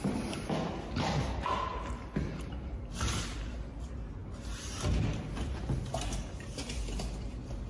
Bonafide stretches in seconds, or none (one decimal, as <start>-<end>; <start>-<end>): 0.0-7.7